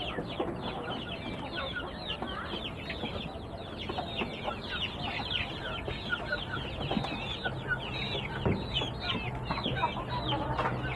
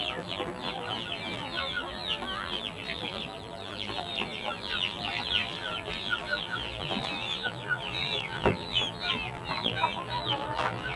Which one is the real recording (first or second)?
first